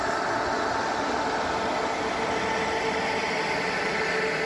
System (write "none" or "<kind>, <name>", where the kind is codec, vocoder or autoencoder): none